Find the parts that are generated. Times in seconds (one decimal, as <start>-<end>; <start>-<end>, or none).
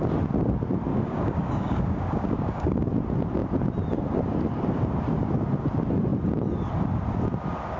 0.9-2.9